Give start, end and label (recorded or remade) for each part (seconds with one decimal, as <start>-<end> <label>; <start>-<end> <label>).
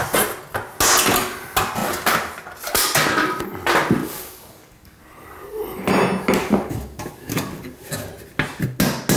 0.0-4.0 recorded; 4.0-5.0 remade; 5.0-6.4 recorded; 6.4-8.1 remade; 8.1-9.2 recorded